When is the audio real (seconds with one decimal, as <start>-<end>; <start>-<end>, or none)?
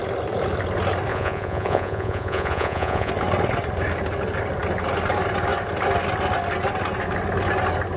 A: 0.0-1.1; 3.1-8.0